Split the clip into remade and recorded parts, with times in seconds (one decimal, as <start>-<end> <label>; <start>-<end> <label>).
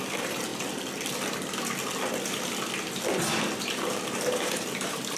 0.0-0.5 remade; 0.5-3.6 recorded; 3.6-5.2 remade